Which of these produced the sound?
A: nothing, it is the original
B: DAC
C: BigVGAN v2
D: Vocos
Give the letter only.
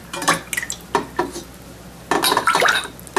A